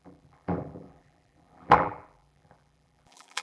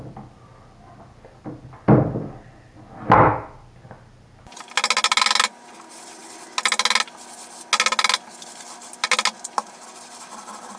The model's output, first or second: first